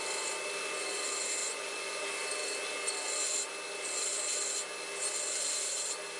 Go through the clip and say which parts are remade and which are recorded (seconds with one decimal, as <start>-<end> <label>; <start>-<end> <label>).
0.0-1.4 recorded; 1.4-2.0 remade; 2.0-6.2 recorded